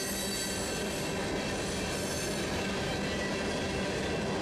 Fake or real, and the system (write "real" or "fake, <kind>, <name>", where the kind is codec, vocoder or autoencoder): real